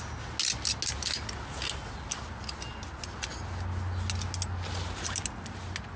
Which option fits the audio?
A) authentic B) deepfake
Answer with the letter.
A